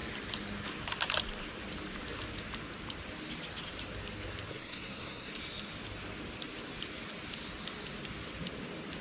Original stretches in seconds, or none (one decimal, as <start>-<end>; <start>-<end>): 0.0-4.5; 5.3-9.0